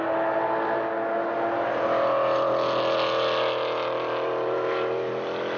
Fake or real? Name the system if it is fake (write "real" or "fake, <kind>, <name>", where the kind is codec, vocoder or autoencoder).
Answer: real